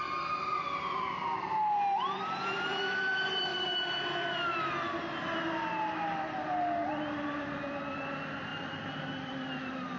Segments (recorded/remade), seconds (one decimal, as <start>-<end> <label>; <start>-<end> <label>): 0.0-10.0 recorded